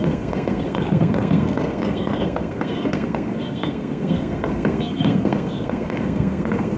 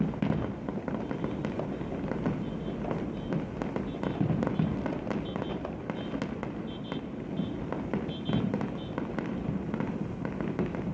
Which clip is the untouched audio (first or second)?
second